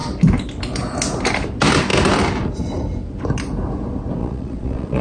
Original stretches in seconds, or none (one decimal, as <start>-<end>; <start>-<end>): 0.0-4.2